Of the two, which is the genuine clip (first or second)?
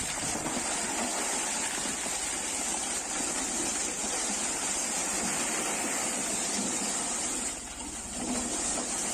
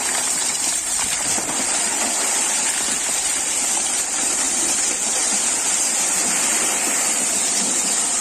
first